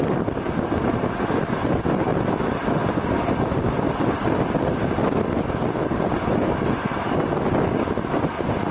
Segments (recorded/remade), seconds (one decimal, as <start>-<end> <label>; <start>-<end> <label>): 0.0-8.7 recorded